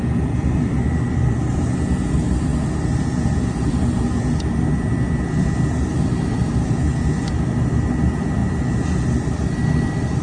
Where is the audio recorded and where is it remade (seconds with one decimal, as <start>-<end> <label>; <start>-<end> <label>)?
0.0-10.2 remade

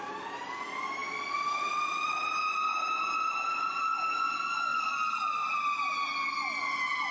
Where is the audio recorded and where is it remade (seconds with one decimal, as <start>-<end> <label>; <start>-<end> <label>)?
0.0-1.0 recorded; 1.0-2.2 remade; 2.2-4.7 recorded; 4.7-7.1 remade